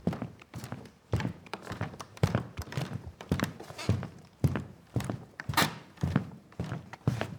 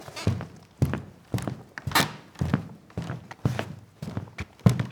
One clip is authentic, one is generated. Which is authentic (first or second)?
second